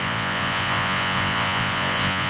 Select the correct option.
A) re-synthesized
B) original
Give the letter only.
A